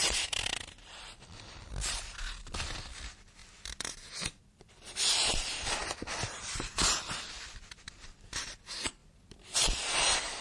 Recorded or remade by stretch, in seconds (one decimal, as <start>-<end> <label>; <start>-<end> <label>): 0.0-1.7 remade; 1.7-3.4 recorded; 3.4-4.7 remade; 4.7-10.4 recorded

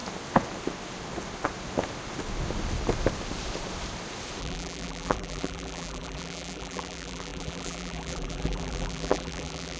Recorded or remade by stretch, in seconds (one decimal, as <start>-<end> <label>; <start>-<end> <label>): 0.0-4.4 recorded; 4.4-9.8 remade

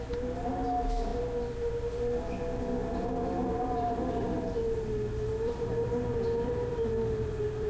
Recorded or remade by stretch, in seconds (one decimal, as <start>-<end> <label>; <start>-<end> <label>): 0.0-5.3 recorded; 5.3-7.7 remade

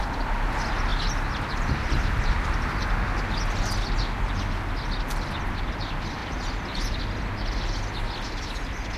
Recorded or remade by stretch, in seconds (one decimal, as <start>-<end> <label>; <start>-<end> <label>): 0.0-6.2 recorded; 6.2-7.0 remade; 7.0-9.0 recorded

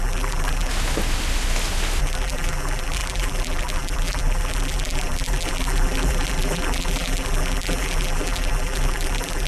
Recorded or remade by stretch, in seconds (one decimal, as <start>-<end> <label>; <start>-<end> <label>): 0.0-0.7 remade; 0.7-2.0 recorded; 2.0-9.5 remade